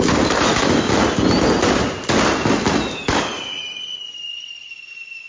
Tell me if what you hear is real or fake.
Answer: real